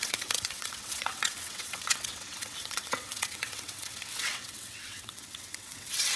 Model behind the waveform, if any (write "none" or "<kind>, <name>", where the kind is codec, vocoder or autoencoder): vocoder, WaveNeXt